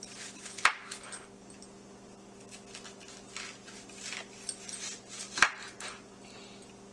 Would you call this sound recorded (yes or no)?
yes